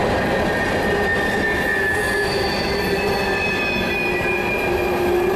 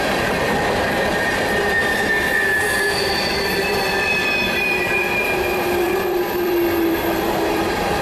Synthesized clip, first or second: second